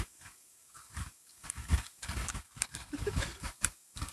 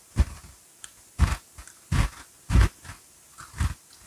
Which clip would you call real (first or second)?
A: second